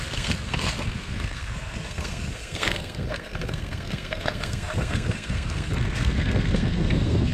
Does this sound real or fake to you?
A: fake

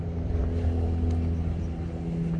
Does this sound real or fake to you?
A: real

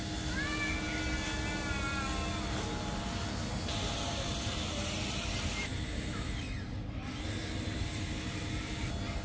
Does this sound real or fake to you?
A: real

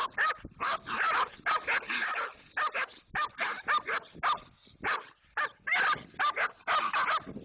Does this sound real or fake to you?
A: real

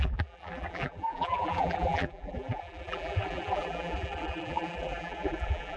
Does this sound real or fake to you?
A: fake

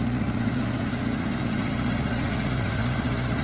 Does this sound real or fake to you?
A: fake